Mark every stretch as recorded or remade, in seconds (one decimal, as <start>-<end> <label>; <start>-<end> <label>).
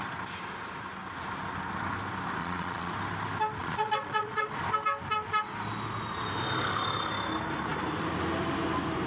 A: 0.0-2.4 recorded; 2.4-2.9 remade; 2.9-3.6 recorded; 3.6-4.5 remade; 4.5-9.1 recorded